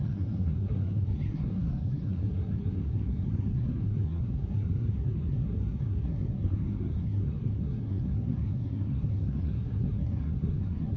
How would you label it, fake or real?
fake